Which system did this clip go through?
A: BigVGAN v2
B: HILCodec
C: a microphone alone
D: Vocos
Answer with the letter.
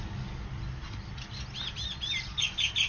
C